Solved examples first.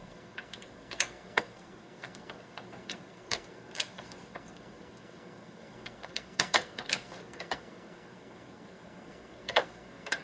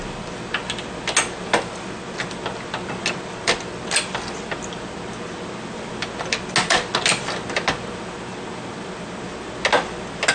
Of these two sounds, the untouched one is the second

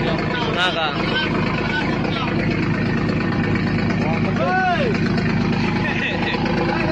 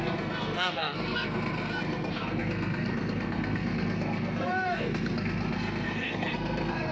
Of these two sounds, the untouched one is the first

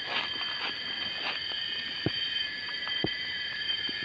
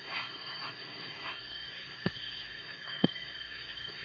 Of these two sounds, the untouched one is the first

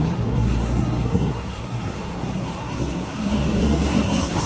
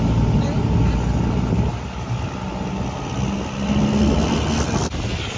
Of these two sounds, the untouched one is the second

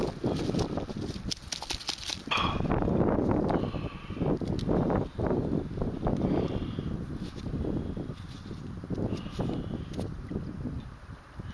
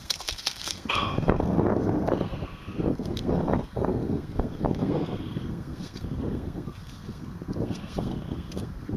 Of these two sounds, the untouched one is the first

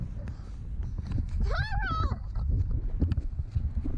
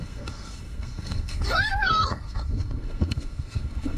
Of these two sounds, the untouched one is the first